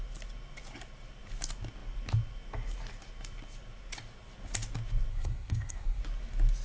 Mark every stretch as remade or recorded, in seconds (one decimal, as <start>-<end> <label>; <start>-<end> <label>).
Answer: 0.0-5.1 recorded; 5.1-6.0 remade; 6.0-6.6 recorded